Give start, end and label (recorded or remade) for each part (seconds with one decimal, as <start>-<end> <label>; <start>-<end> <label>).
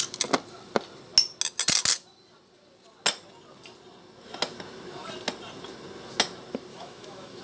0.0-6.7 recorded; 6.7-7.4 remade